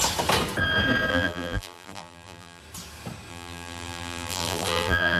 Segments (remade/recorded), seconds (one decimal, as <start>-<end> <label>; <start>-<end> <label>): 0.0-1.1 recorded; 1.1-2.6 remade; 2.6-3.3 recorded; 3.3-5.2 remade